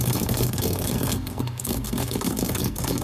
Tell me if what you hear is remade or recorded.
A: remade